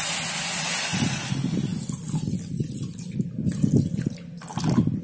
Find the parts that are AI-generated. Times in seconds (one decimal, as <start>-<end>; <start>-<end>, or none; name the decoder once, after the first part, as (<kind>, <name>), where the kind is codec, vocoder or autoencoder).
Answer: none